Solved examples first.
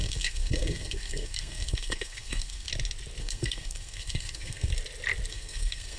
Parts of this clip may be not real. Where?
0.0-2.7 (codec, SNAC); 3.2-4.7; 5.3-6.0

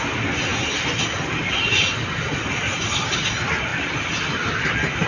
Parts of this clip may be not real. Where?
none

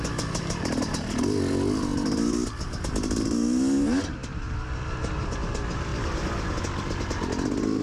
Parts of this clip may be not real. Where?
none

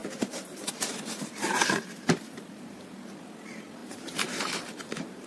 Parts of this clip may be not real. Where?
0.0-3.2 (vocoder, BigVGAN v2); 3.8-5.3

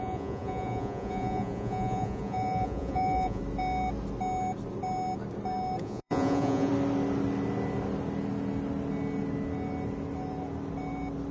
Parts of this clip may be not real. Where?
0.0-3.4 (vocoder, Vocos); 5.8-6.7

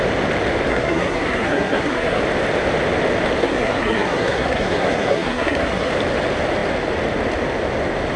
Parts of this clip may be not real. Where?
0.7-2.2 (codec, SNAC); 3.4-5.9

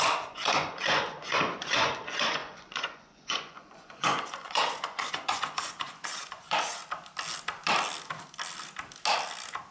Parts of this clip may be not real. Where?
0.0-6.8 (vocoder, Vocos)

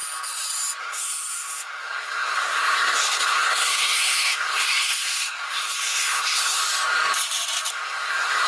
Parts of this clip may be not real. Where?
0.8-6.6 (codec, SNAC); 7.7-8.5